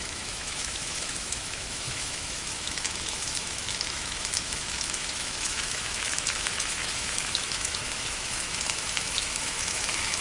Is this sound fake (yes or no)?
yes